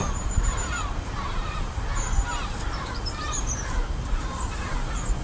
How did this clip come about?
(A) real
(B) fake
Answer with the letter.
B